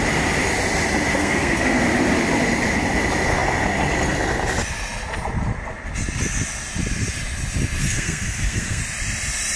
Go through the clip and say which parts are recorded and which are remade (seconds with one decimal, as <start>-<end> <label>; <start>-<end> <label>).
0.0-1.2 recorded; 1.2-1.8 remade; 1.8-7.8 recorded; 7.8-8.8 remade; 8.8-9.6 recorded